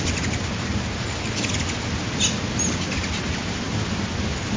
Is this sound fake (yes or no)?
no